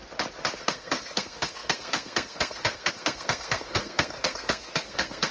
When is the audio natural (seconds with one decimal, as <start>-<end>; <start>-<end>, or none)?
0.0-0.6